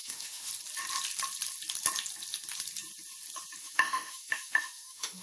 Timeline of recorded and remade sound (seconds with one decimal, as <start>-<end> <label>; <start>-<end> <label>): 0.0-0.5 remade; 0.5-3.6 recorded; 3.6-5.2 remade